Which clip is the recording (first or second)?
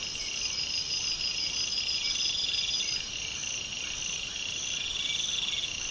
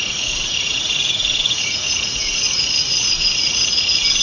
first